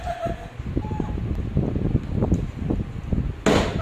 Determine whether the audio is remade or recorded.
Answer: recorded